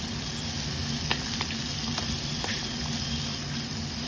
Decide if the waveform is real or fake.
real